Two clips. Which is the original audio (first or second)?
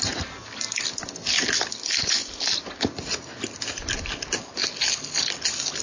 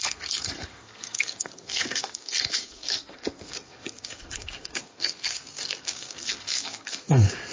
first